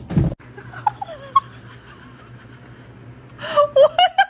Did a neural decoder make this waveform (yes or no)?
no